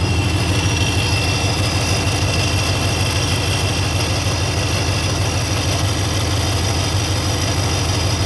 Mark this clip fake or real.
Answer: real